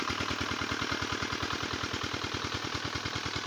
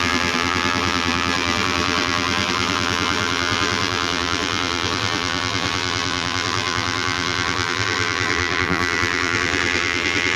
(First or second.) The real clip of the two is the first